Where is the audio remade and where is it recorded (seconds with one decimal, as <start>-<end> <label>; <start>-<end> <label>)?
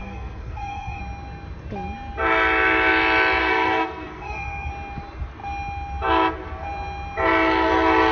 0.0-1.0 remade; 1.0-3.4 recorded; 3.4-4.7 remade; 4.7-8.1 recorded